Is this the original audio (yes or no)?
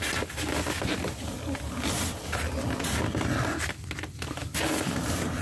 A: yes